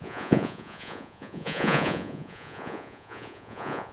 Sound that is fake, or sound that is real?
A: fake